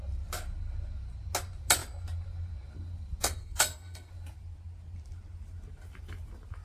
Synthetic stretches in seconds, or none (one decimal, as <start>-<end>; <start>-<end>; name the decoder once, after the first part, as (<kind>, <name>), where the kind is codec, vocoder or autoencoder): 3.2-4.1 (codec, SNAC)